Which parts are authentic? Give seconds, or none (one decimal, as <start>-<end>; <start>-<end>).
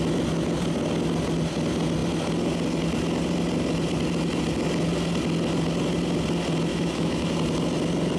0.0-6.7; 7.3-8.2